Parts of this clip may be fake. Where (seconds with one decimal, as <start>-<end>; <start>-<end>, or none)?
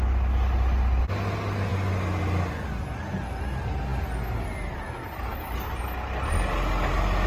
none